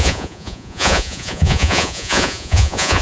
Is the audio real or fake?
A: fake